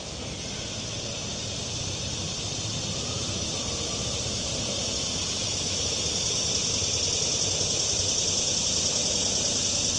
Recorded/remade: recorded